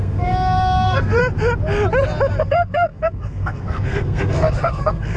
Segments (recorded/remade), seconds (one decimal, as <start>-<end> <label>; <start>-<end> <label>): 0.0-1.2 remade; 1.2-2.4 recorded; 2.4-5.2 remade